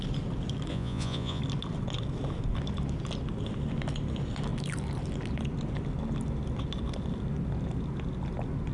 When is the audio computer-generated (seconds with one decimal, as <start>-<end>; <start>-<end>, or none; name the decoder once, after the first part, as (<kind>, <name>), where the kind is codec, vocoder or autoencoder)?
0.7-1.4 (vocoder, Vocos)